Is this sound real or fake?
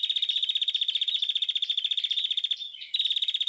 real